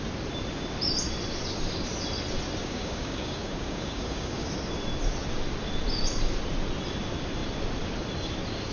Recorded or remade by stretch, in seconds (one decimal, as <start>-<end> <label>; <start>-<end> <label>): 0.0-2.6 recorded; 2.6-4.5 remade; 4.5-8.7 recorded